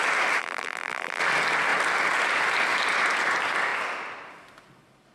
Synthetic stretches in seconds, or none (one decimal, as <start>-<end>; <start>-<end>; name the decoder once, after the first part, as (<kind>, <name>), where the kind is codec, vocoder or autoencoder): 0.4-1.2 (vocoder, BigVGAN v2)